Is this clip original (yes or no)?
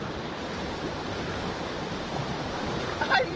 no